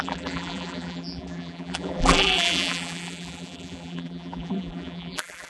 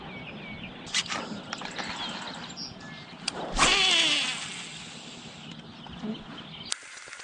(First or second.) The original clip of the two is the second